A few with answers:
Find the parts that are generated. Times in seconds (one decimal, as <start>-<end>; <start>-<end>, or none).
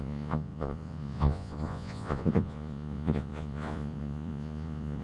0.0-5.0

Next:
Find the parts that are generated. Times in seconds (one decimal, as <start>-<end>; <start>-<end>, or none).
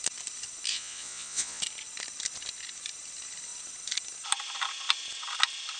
0.7-1.6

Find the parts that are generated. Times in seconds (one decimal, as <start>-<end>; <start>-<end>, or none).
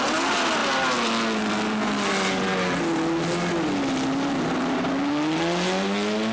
none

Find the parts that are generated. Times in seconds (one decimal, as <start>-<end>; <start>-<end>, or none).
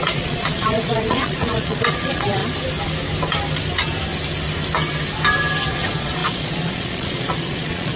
0.0-2.4; 5.7-8.0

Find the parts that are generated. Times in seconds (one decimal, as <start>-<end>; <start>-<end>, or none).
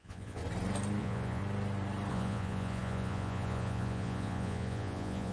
0.0-0.4; 1.0-1.4; 2.1-5.3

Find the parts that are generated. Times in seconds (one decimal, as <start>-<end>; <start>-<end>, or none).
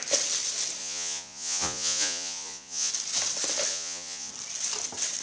0.8-2.9; 3.7-4.3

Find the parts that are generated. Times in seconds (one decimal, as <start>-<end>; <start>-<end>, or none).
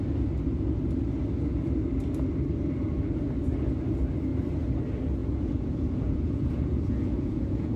5.2-7.8